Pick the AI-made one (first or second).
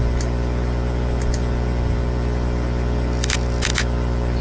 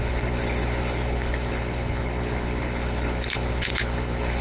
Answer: second